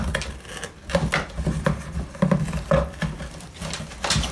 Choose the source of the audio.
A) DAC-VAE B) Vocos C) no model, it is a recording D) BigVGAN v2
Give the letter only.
C